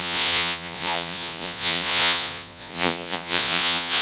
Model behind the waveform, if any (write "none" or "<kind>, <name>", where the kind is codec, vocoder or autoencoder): vocoder, Vocos